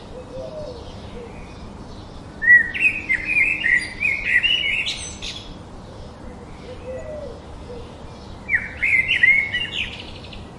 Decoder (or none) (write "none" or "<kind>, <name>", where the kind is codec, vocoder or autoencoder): none